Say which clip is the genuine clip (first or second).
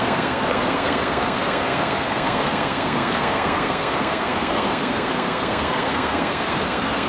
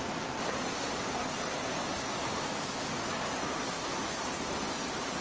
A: second